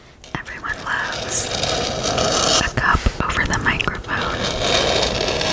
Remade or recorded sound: recorded